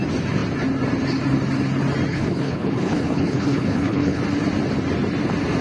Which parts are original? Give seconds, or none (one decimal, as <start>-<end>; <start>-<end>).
0.0-2.1; 4.2-5.6